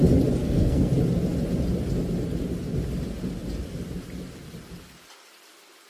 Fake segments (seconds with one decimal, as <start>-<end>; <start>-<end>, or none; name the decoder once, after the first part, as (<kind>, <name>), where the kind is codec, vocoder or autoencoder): 0.4-0.9 (codec, SNAC)